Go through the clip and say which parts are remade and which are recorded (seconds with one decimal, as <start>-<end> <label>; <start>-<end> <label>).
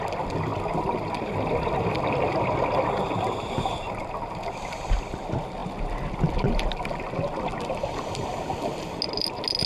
0.0-0.5 recorded; 0.5-4.9 remade; 4.9-9.7 recorded